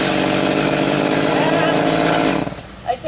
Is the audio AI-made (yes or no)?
no